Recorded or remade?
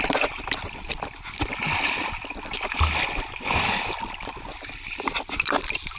recorded